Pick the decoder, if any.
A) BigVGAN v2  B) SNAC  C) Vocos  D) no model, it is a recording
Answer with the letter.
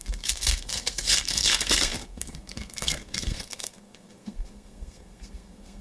B